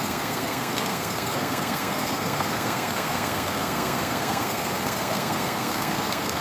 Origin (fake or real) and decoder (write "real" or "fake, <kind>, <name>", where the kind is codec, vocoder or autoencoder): fake, codec, SNAC